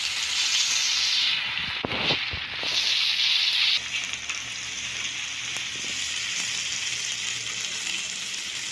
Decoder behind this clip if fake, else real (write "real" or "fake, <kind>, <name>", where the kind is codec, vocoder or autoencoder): real